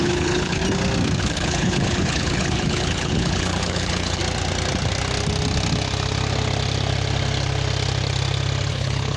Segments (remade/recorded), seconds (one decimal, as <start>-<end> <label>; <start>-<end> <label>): 0.0-0.6 remade; 0.6-1.2 recorded; 1.2-4.2 remade; 4.2-8.7 recorded; 8.7-9.2 remade